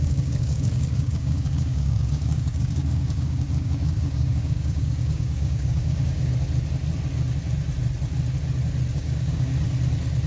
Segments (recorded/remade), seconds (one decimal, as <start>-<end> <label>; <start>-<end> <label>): 0.0-6.3 remade; 6.3-8.9 recorded; 8.9-9.5 remade; 9.5-10.3 recorded